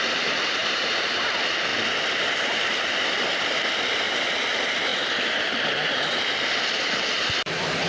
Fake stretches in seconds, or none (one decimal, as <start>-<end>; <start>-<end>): 0.6-1.2